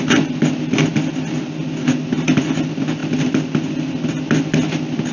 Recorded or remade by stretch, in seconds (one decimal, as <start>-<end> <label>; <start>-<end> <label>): 0.0-5.1 recorded